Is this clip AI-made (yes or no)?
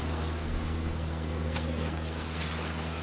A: yes